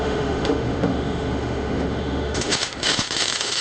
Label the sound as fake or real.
fake